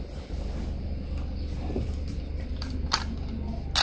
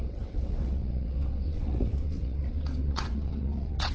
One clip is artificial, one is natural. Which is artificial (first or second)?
second